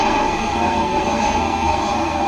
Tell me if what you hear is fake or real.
fake